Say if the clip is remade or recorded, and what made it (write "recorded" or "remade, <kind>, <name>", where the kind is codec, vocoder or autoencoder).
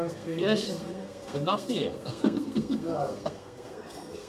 remade, codec, SNAC